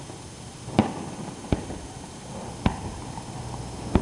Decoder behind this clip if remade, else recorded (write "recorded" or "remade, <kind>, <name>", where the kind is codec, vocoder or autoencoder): recorded